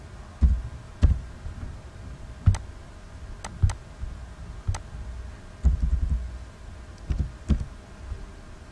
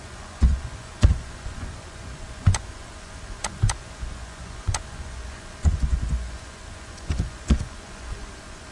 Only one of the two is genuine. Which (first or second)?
first